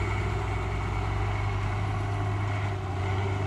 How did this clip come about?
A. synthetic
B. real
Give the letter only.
B